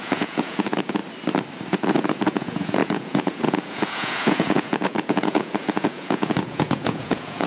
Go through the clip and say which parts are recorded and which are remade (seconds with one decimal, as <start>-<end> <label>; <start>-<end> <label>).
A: 0.0-1.0 remade; 1.0-1.7 recorded; 1.7-7.5 remade

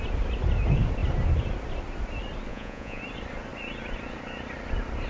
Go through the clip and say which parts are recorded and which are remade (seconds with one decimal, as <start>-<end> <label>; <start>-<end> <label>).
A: 0.0-2.5 recorded; 2.5-3.0 remade; 3.0-5.1 recorded